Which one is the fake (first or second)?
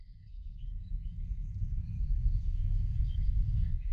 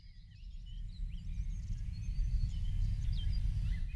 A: first